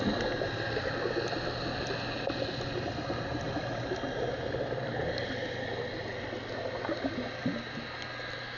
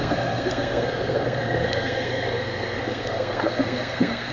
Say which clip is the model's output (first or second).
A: second